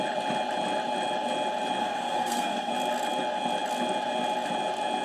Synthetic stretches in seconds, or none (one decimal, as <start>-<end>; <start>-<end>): 1.8-2.7